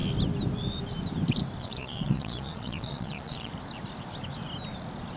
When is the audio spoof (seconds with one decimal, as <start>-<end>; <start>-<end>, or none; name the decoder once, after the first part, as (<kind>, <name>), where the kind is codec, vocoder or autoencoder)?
1.6-3.5 (vocoder, Vocos)